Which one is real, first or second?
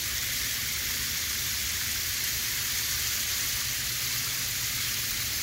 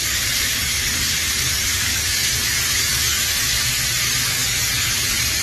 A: first